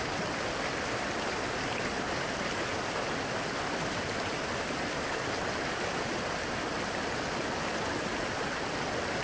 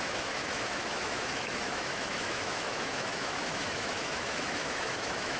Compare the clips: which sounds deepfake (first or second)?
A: second